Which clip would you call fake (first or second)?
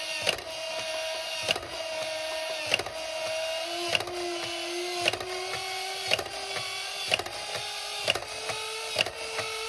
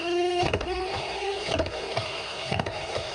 second